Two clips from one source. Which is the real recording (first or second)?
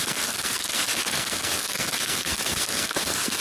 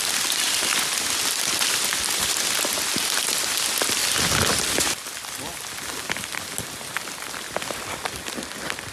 second